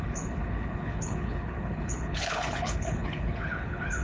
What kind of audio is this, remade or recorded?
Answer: remade